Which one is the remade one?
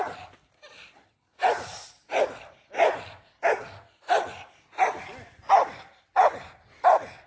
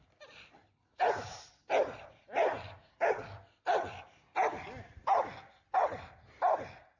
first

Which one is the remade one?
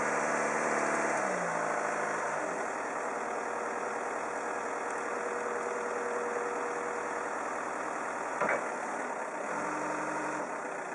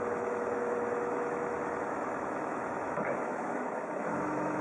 second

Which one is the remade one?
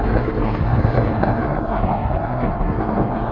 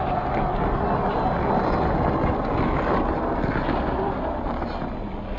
first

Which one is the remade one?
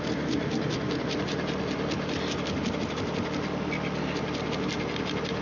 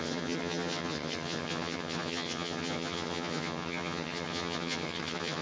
second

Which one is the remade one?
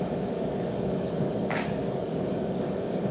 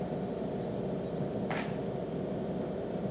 first